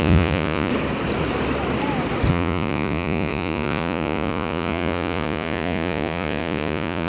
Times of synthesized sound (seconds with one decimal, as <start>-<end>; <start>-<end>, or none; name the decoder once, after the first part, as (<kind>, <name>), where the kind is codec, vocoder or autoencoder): 0.0-0.7 (vocoder, Vocos); 2.3-7.1